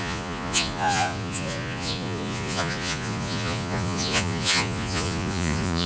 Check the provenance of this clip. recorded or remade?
remade